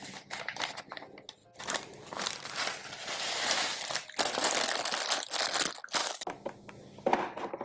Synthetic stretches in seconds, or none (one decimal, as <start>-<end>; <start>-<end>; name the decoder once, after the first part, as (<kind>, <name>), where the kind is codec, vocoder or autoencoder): 6.0-6.7 (autoencoder, DAC-VAE)